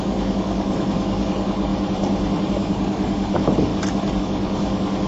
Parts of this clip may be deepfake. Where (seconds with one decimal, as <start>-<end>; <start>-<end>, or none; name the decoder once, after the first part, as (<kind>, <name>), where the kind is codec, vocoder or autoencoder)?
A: 0.0-1.7 (codec, DAC); 2.5-3.7; 4.2-5.1